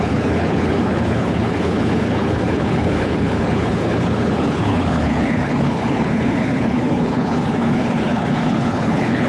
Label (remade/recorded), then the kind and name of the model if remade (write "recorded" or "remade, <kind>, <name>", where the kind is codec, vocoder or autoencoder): remade, codec, HILCodec